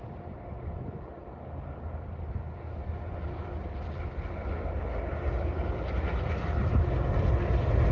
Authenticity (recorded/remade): recorded